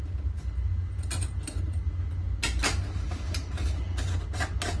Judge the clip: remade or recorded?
recorded